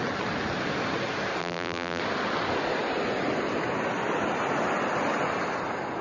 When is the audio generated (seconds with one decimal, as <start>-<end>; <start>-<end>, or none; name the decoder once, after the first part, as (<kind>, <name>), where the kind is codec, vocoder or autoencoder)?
1.4-2.0 (vocoder, BigVGAN v2)